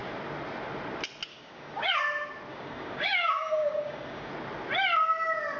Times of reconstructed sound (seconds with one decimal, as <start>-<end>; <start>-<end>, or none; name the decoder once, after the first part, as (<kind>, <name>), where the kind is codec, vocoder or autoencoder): 1.3-2.0 (codec, DAC); 2.5-4.3